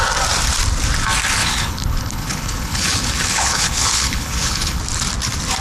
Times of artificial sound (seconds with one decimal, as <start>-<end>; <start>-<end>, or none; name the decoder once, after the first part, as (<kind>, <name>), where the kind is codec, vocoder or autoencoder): 1.4-4.8 (codec, HILCodec)